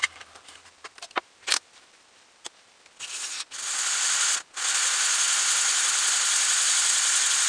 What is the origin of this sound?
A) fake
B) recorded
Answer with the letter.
B